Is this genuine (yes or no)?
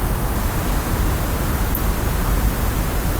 yes